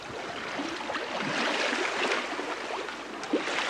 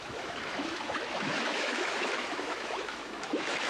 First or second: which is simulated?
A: second